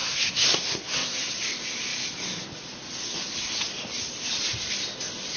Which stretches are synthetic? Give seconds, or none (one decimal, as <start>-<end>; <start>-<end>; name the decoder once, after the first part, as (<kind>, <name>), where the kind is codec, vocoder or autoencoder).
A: 0.0-1.3 (codec, SNAC)